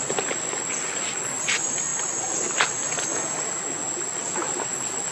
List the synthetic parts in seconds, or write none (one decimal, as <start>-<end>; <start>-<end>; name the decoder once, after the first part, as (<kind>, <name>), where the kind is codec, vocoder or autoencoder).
none